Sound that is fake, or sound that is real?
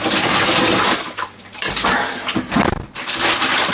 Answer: real